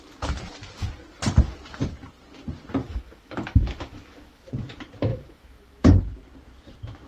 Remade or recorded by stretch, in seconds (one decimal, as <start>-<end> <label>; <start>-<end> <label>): 0.0-2.8 recorded; 2.8-4.5 remade; 4.5-5.1 recorded; 5.1-6.0 remade; 6.0-7.1 recorded